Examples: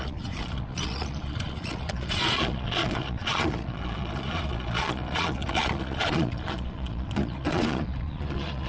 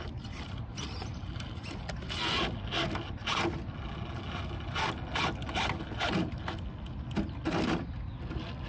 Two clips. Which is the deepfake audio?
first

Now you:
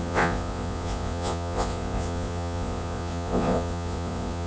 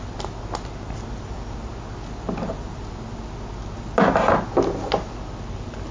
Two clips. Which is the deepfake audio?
first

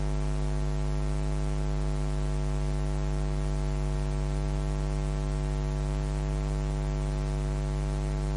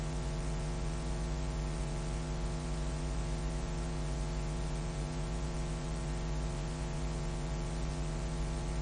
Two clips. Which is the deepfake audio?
second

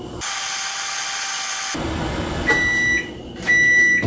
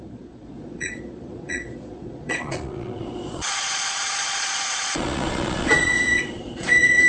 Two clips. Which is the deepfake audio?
second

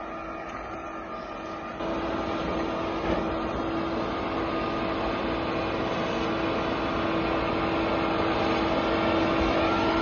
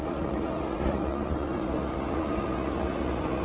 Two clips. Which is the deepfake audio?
second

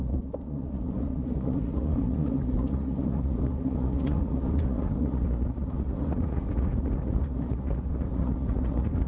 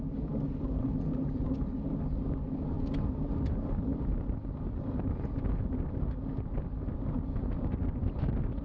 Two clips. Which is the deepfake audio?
first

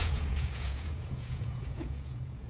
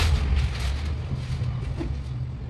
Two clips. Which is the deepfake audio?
first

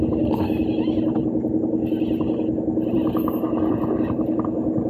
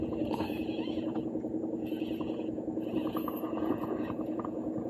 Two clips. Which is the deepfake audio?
second